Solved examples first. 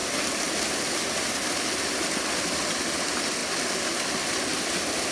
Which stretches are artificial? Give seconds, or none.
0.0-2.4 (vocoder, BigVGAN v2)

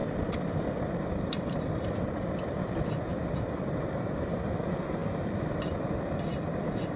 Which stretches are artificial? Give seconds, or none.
0.0-2.6 (vocoder, BigVGAN v2); 3.1-3.8

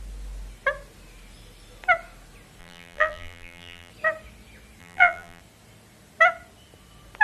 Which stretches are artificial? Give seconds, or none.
2.6-3.9 (vocoder, BigVGAN v2); 4.8-5.4

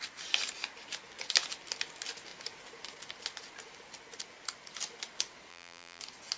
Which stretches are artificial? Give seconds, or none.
5.5-6.0 (vocoder, BigVGAN v2)

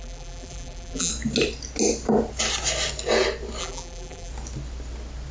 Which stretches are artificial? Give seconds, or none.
0.0-1.1 (vocoder, BigVGAN v2); 3.6-4.3